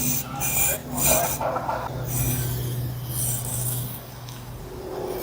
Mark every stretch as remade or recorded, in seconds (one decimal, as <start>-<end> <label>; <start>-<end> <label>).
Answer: 0.0-3.5 recorded; 3.5-4.6 remade; 4.6-5.2 recorded